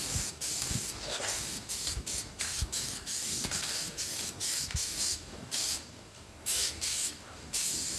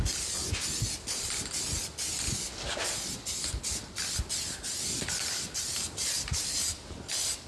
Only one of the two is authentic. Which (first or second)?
second